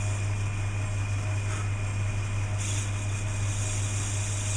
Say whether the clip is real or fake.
real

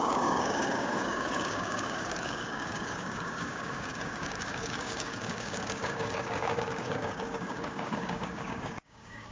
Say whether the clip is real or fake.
fake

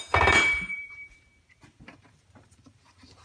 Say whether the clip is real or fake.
fake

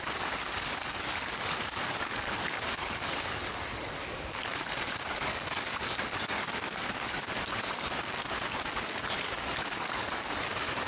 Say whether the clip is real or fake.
fake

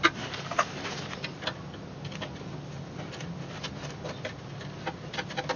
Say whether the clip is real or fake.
real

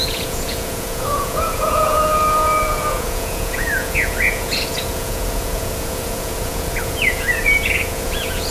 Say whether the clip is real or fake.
fake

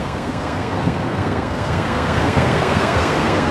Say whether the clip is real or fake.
fake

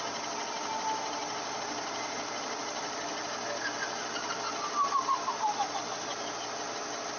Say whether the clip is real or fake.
real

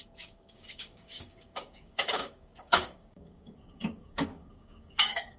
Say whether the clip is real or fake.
fake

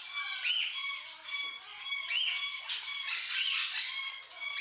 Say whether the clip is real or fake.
real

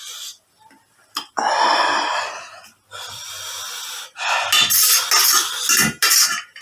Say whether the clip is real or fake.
real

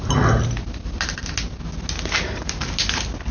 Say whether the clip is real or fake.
real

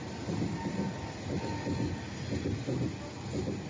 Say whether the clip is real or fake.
real